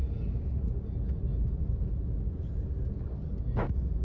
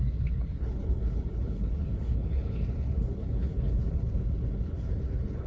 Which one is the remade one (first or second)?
second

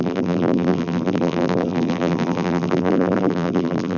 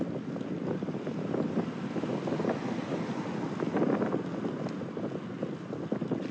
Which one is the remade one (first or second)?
first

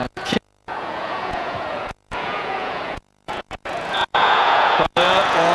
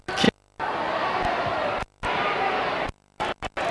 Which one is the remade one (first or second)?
first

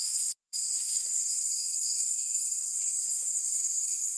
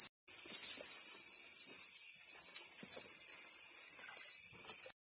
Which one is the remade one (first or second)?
first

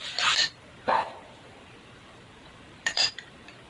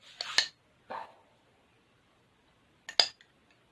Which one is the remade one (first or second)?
first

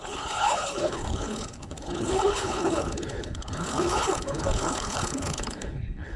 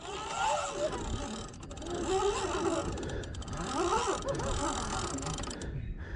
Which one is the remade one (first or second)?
first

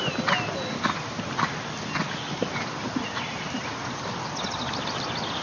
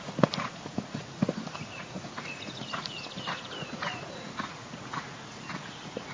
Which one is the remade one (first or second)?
second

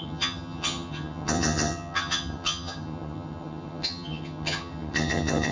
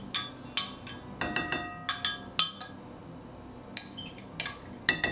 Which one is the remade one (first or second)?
first